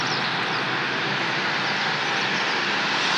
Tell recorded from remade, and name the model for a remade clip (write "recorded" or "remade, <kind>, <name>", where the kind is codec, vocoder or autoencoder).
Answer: recorded